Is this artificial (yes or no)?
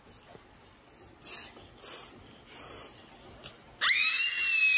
no